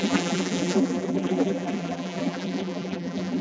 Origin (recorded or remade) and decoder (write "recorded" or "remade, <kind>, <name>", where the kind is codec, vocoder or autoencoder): remade, vocoder, BigVGAN v2